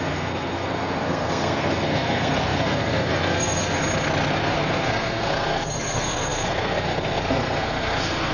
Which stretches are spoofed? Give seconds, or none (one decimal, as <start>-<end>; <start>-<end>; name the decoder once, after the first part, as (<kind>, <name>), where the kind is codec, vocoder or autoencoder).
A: 0.0-3.8 (codec, SNAC); 4.3-8.3